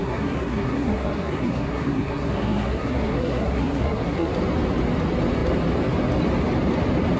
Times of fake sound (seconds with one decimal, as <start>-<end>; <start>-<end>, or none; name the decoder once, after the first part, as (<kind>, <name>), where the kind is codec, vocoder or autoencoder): 0.0-4.3 (codec, SNAC)